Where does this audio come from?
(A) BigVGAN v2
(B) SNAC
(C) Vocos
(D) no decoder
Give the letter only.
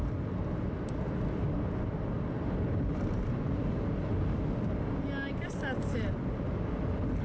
D